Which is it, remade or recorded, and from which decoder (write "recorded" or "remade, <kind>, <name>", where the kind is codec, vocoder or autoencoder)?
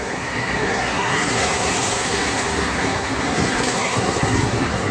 remade, codec, SNAC